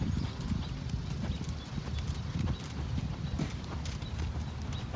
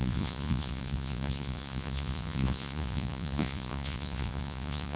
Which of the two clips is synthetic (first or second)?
second